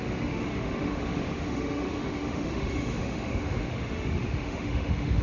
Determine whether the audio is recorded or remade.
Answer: remade